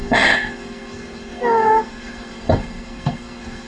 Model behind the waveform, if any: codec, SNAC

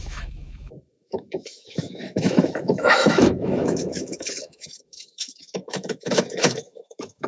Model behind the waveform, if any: autoencoder, DAC-VAE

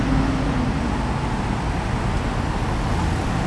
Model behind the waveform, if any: none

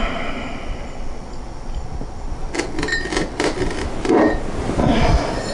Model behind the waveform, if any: vocoder, BigVGAN v2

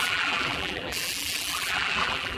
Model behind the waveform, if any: vocoder, BigVGAN v2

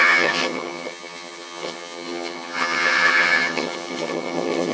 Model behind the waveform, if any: vocoder, HiFi-GAN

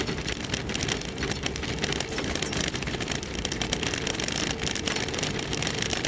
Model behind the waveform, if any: none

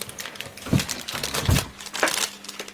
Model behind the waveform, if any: none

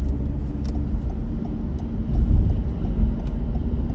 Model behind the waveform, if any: none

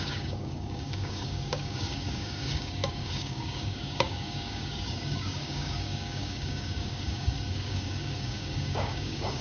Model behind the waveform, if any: codec, DAC